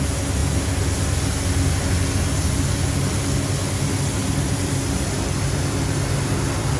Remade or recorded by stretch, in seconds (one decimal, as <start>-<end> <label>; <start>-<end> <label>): 0.0-6.8 recorded